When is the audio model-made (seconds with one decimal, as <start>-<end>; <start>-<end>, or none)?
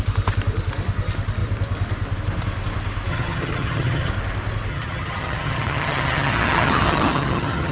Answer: 3.1-4.1; 4.7-7.7